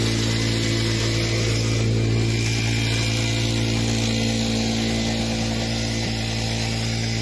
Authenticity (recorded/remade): recorded